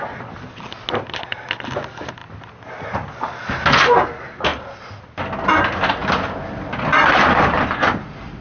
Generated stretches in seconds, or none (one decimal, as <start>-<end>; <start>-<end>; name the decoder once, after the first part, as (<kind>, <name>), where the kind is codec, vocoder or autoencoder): 4.5-5.2 (vocoder, BigVGAN v2); 6.0-6.7